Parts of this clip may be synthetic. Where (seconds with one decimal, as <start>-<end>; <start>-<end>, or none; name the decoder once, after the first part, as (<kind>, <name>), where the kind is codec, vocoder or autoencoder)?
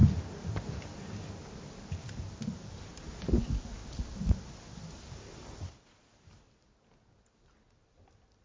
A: none